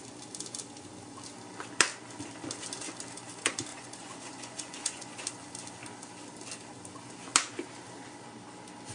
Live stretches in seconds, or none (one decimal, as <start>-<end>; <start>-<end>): 0.0-3.7; 5.1-8.9